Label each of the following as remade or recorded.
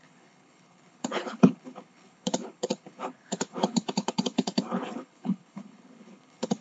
remade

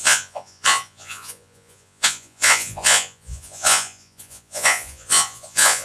remade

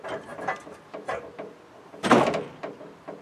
recorded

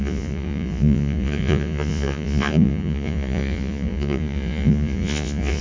remade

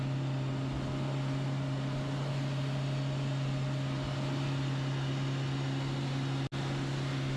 recorded